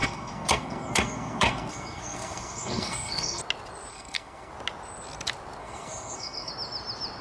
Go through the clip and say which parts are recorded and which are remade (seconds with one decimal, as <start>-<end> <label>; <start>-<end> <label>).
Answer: 0.0-3.4 remade; 3.4-3.9 recorded; 3.9-4.5 remade; 4.5-5.6 recorded; 5.6-6.5 remade; 6.5-7.2 recorded